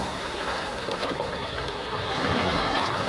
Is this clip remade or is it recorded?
remade